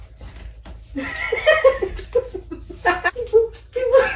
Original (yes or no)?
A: yes